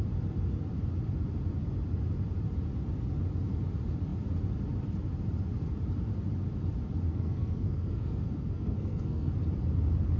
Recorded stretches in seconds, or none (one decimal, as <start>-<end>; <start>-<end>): 0.0-7.1; 9.3-10.2